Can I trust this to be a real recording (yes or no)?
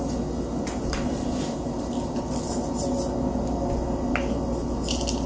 yes